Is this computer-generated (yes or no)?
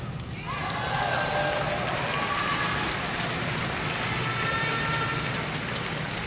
no